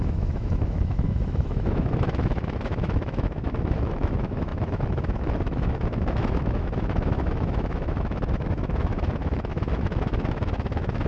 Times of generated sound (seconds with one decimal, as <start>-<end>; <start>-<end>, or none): 0.0-11.1